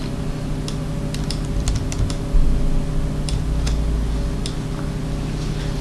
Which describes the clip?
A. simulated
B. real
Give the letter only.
B